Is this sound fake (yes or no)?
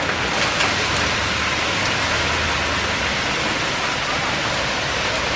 yes